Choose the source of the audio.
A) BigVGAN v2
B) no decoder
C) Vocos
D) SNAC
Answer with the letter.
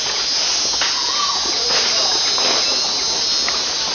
B